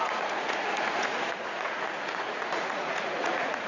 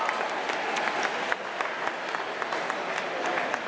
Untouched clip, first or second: second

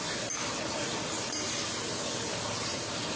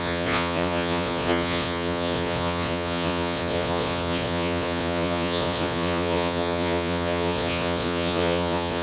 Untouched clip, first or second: first